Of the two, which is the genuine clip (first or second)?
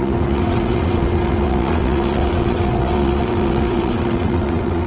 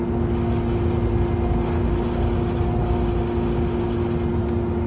second